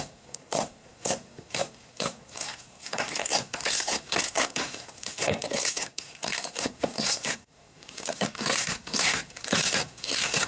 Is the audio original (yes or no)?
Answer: no